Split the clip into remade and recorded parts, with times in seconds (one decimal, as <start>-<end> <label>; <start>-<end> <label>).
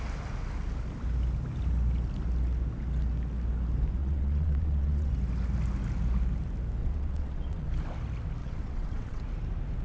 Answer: 0.0-4.0 recorded; 4.0-5.1 remade; 5.1-6.8 recorded; 6.8-7.7 remade; 7.7-8.4 recorded; 8.4-9.2 remade; 9.2-9.8 recorded